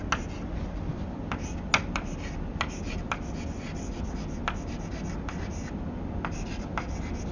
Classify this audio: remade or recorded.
recorded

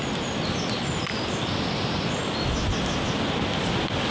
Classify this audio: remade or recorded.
recorded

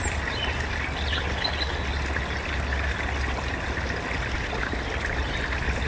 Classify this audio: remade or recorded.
recorded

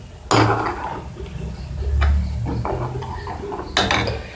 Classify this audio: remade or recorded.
recorded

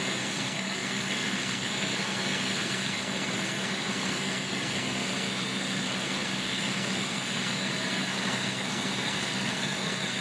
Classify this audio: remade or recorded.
remade